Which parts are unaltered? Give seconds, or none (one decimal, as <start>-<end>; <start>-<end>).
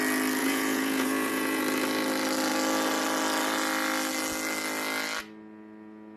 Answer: 0.0-0.4; 1.6-6.2